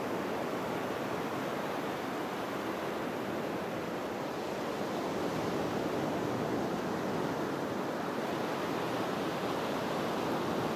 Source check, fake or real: real